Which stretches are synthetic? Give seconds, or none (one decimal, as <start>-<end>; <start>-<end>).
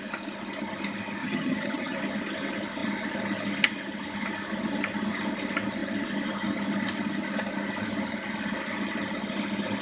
1.2-2.0